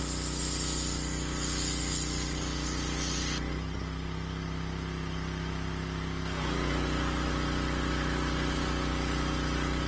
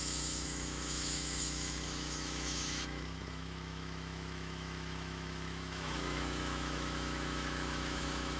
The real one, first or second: first